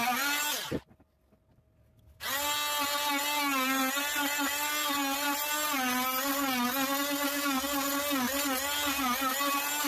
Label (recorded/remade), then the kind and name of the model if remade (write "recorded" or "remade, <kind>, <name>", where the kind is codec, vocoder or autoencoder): recorded